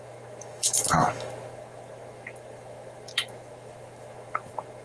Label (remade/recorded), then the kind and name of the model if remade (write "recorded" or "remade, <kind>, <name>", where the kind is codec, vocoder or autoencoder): remade, autoencoder, DAC-VAE